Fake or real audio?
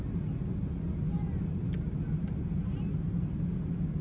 real